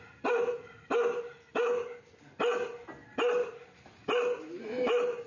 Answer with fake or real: real